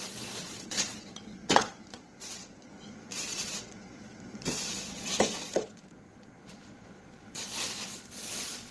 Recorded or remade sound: remade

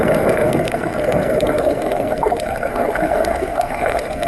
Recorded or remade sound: remade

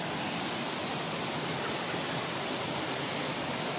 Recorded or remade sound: recorded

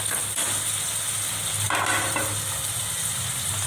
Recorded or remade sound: recorded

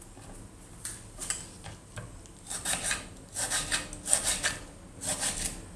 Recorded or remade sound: recorded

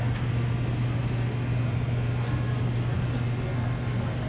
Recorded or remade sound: recorded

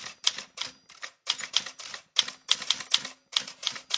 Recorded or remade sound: recorded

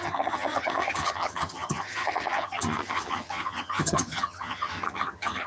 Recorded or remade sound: remade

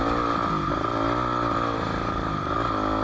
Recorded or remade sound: recorded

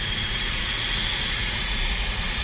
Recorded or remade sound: remade